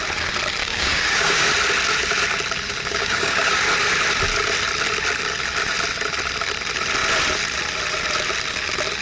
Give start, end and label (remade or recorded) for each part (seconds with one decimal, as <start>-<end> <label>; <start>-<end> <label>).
0.0-0.6 recorded; 0.6-1.5 remade; 1.5-2.9 recorded; 2.9-3.6 remade; 3.6-9.0 recorded